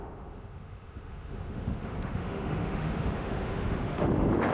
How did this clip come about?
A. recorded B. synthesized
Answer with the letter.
B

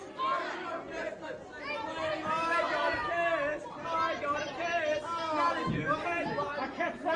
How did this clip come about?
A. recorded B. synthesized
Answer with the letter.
A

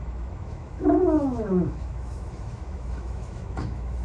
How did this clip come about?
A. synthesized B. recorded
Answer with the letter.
A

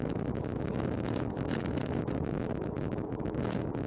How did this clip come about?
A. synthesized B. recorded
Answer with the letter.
A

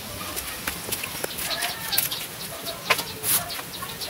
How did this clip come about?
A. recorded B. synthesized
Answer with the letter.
A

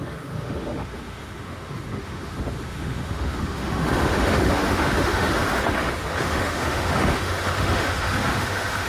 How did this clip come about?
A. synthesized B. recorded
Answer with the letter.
A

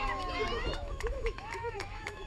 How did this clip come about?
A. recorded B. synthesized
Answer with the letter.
B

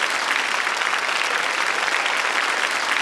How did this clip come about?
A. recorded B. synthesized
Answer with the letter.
A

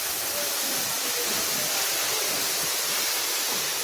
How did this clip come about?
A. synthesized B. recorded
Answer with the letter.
B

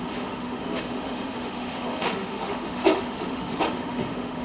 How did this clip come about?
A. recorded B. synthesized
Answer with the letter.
B